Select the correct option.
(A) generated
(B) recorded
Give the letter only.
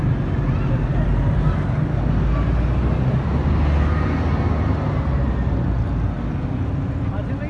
B